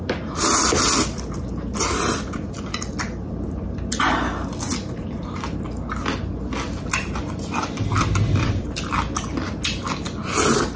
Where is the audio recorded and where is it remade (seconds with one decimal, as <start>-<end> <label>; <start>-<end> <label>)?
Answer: 0.0-1.7 recorded; 1.7-3.6 remade; 3.6-10.8 recorded